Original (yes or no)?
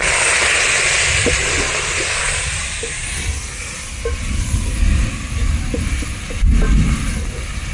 yes